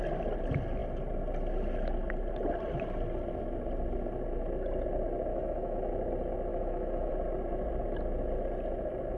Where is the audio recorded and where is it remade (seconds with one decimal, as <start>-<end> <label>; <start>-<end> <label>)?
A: 0.0-5.3 recorded; 5.3-5.9 remade; 5.9-6.5 recorded; 6.5-7.1 remade; 7.1-9.2 recorded